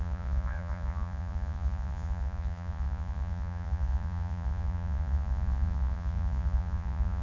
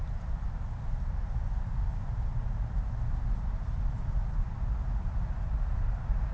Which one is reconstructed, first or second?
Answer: first